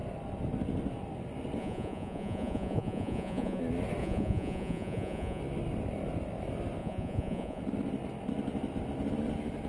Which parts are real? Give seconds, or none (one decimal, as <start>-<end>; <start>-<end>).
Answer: 0.0-1.6; 3.6-4.0; 5.4-6.8; 7.6-9.7